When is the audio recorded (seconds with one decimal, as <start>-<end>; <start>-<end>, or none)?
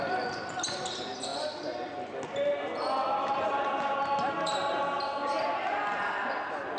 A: 0.0-6.8